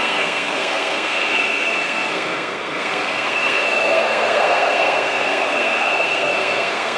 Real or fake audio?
fake